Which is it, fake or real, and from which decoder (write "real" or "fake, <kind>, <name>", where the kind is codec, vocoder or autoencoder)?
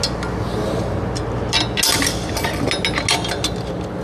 real